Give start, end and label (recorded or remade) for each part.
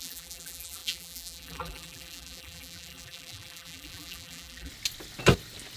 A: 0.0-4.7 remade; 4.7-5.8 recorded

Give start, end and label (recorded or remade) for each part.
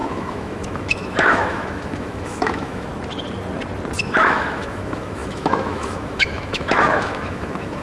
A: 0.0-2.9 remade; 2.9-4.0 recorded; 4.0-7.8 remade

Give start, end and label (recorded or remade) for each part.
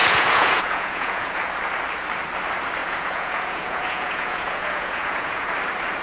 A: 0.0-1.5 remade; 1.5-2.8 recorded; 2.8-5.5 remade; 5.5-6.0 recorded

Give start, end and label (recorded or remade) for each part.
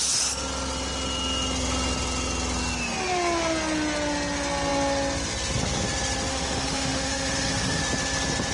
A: 0.0-6.3 recorded; 6.3-7.8 remade; 7.8-8.5 recorded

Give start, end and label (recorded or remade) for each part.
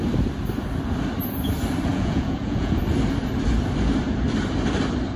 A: 0.0-1.9 recorded; 1.9-2.8 remade; 2.8-5.2 recorded